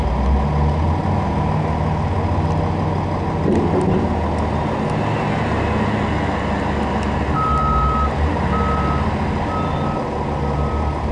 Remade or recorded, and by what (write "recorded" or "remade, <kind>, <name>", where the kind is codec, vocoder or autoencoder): recorded